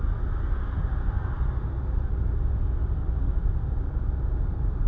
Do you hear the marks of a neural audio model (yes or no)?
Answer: no